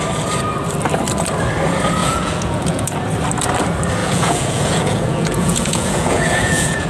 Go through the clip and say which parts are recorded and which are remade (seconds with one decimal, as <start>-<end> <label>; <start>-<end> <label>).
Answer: 0.0-2.0 recorded; 2.0-3.0 remade; 3.0-4.0 recorded; 4.0-6.9 remade